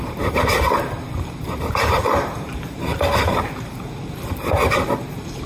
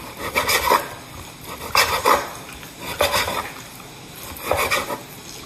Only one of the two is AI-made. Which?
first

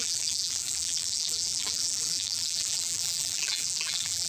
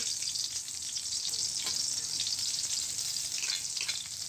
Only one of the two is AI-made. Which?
first